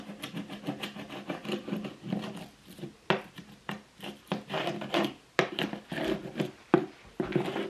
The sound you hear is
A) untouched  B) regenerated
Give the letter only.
A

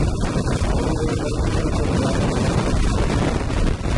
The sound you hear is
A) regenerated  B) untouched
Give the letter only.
B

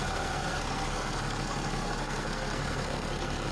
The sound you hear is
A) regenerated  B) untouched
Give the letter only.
A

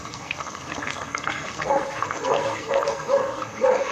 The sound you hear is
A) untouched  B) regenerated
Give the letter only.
B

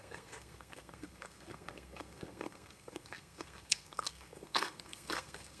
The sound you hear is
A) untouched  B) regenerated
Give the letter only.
B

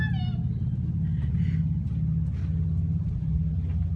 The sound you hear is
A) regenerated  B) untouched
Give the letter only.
B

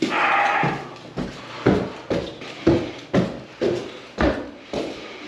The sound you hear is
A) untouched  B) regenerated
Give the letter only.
A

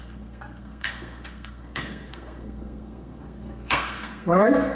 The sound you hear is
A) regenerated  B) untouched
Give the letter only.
A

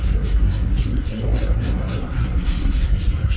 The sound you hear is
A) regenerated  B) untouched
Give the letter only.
A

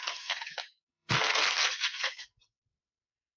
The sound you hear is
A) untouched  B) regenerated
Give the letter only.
B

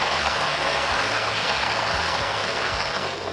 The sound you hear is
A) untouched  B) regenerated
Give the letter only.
B